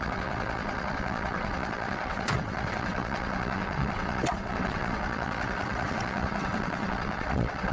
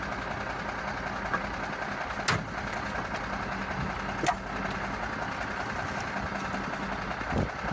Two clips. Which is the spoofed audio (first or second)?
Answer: first